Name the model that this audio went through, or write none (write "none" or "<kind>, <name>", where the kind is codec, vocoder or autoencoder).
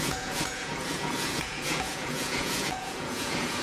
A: vocoder, Vocos